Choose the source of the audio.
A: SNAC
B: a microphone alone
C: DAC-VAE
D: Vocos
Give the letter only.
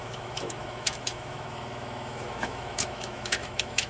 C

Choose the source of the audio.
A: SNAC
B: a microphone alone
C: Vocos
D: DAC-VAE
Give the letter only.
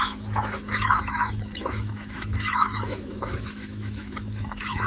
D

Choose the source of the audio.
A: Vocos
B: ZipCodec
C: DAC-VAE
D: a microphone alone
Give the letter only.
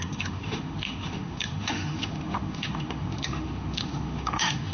C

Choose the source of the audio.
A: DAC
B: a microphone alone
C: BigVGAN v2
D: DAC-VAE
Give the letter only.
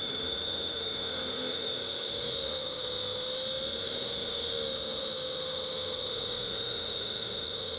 D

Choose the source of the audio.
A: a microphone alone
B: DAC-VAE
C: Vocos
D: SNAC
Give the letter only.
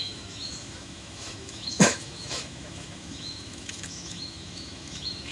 B